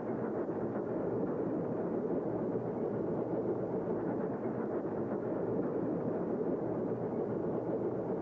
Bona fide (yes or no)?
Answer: yes